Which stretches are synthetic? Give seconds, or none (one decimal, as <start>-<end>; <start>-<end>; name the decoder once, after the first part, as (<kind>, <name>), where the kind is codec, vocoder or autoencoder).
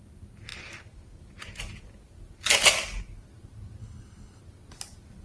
3.8-4.4 (codec, HILCodec)